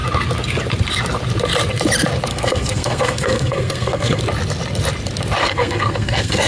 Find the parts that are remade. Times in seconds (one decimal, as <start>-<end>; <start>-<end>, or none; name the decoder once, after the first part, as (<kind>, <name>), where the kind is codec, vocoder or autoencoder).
2.3-4.2 (codec, SNAC); 5.4-6.5